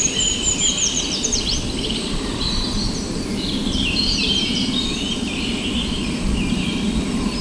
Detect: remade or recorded remade